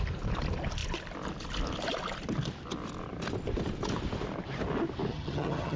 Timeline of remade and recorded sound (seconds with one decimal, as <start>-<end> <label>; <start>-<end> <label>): 0.0-5.1 recorded; 5.1-5.8 remade